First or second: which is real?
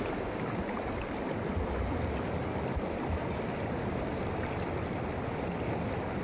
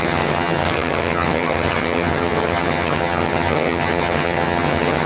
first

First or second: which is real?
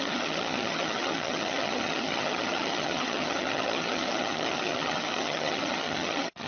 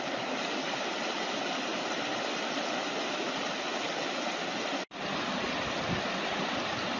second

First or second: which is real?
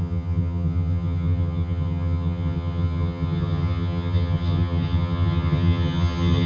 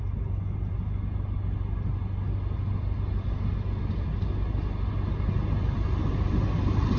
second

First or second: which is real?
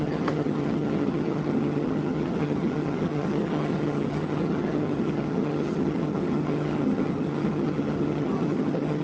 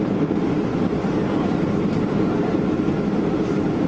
second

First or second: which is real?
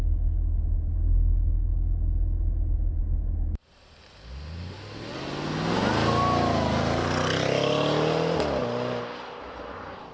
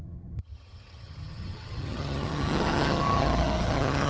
first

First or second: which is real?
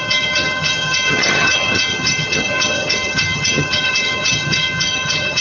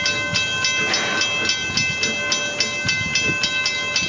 second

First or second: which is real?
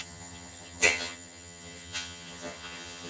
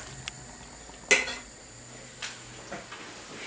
second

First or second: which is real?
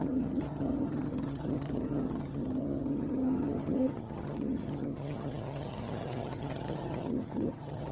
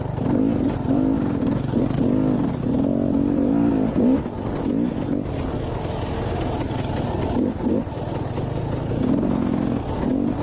second